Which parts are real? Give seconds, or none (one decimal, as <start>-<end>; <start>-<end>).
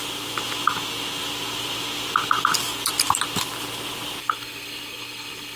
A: 0.0-4.2